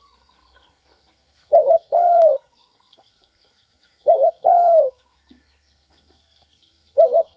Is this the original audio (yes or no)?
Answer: no